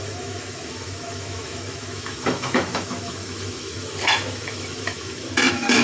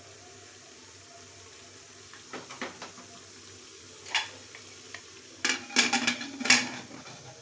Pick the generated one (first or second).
first